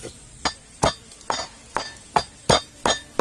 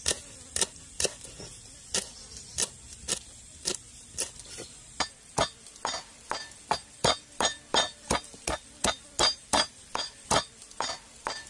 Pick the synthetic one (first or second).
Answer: second